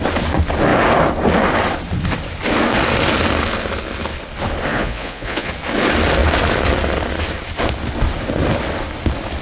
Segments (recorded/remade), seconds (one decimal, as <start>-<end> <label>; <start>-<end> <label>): 0.0-4.7 recorded; 4.7-5.5 remade; 5.5-9.4 recorded